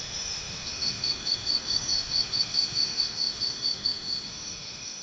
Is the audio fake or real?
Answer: fake